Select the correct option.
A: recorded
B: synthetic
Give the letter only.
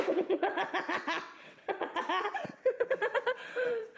B